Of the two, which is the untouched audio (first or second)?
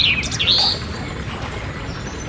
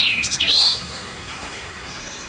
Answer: first